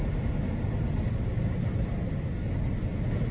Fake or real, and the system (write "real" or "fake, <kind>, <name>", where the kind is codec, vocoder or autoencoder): real